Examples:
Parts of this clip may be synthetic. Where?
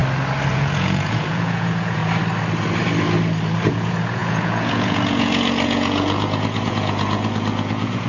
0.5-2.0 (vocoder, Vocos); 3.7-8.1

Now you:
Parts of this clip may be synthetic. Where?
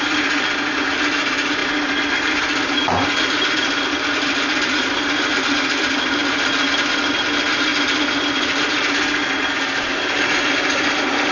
0.0-6.2 (vocoder, BigVGAN v2); 6.7-7.7; 8.9-11.3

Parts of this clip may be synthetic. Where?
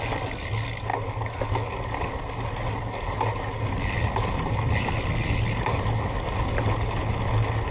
none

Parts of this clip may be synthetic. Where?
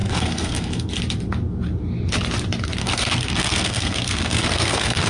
0.0-0.9 (codec, SNAC); 2.8-5.1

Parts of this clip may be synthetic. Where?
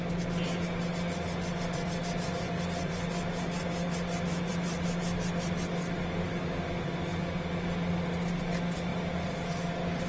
8.9-9.7 (vocoder, BigVGAN v2)